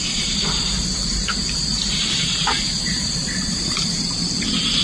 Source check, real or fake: fake